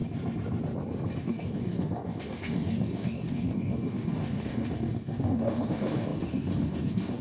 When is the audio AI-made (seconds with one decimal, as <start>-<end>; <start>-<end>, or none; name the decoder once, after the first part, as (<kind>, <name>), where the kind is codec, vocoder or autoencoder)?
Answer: 1.2-7.2 (codec, DAC)